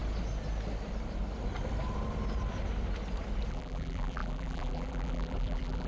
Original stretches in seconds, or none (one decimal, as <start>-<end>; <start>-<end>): 0.0-3.5